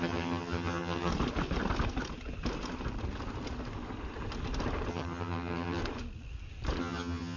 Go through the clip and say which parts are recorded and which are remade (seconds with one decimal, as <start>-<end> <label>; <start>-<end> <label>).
0.0-1.1 remade; 1.1-4.9 recorded; 4.9-5.8 remade; 5.8-6.8 recorded; 6.8-7.4 remade